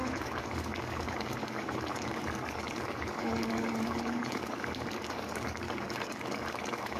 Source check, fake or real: fake